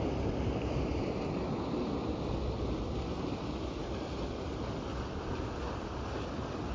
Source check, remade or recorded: recorded